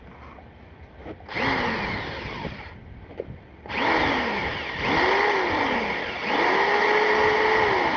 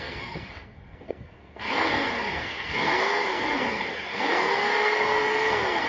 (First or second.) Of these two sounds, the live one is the first